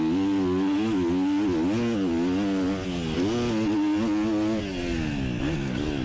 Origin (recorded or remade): recorded